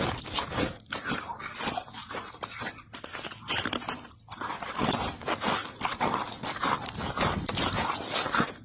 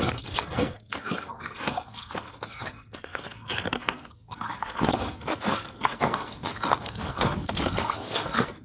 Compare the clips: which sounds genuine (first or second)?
first